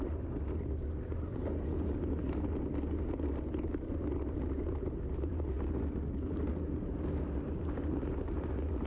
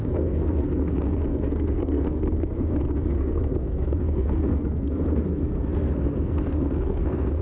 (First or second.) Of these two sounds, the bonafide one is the first